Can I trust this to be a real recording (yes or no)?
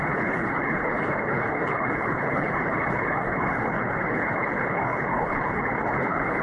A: no